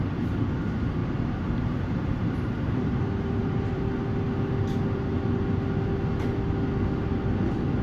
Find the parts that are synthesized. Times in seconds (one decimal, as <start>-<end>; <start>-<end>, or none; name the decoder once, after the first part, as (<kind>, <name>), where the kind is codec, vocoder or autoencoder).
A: 1.0-3.8 (vocoder, BigVGAN v2)